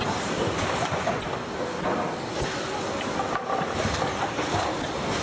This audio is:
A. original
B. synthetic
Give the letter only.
A